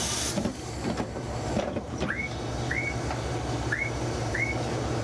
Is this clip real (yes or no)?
no